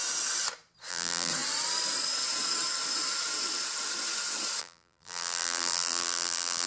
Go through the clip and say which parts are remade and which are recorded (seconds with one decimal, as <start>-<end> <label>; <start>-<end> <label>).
0.0-0.9 recorded; 0.9-1.3 remade; 1.3-4.6 recorded; 4.6-6.7 remade